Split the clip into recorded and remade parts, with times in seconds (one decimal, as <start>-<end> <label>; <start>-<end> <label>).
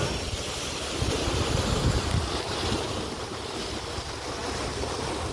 0.0-5.3 recorded